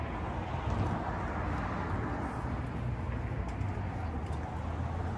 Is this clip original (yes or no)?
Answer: yes